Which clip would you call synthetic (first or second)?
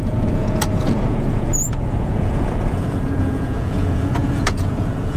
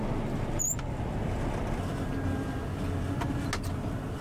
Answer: first